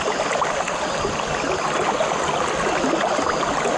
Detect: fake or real real